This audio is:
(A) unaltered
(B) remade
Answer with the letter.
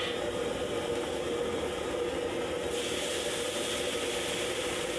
A